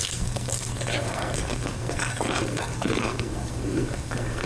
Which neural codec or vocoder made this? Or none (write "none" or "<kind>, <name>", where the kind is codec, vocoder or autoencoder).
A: codec, SNAC